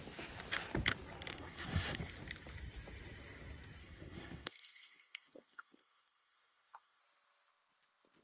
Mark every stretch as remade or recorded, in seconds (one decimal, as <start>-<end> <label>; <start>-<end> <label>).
0.0-1.3 recorded; 1.3-2.0 remade; 2.0-3.8 recorded; 3.8-7.0 remade; 7.0-8.2 recorded